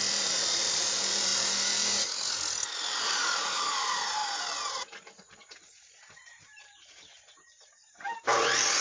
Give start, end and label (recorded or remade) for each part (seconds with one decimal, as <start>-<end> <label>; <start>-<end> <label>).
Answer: 0.0-1.3 remade; 1.3-3.0 recorded; 3.0-4.2 remade; 4.2-5.1 recorded; 5.1-8.8 remade